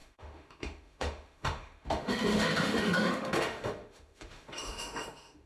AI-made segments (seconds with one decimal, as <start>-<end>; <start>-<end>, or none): 0.0-5.5